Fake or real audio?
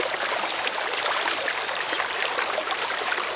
real